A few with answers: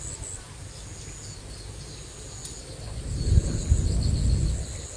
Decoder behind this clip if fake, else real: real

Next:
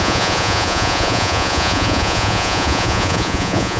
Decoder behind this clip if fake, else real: fake, vocoder, Vocos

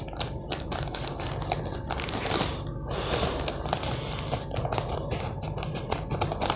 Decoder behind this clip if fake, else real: real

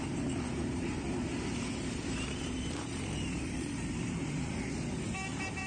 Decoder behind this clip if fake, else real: fake, vocoder, BigVGAN v2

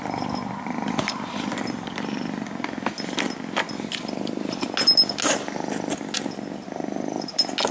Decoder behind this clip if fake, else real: real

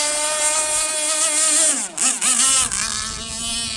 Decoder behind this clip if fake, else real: real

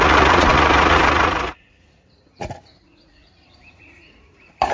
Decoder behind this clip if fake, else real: fake, vocoder, Vocos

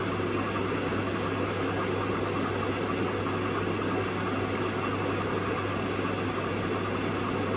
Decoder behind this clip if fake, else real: real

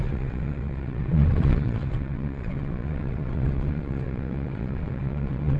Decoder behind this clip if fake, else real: fake, vocoder, WaveNeXt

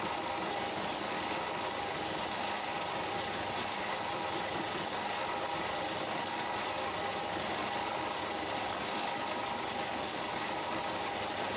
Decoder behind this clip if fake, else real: real